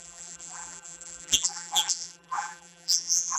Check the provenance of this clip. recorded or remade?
remade